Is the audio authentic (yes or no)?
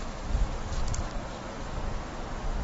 yes